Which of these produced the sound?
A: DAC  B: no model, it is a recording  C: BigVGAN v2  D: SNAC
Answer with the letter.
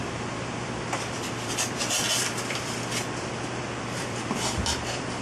C